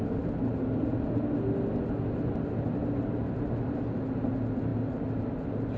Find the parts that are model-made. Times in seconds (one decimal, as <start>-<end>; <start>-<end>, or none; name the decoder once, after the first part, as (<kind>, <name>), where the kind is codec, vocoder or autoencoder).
none